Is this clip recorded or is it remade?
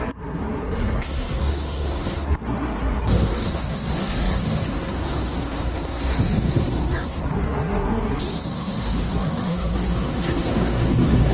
remade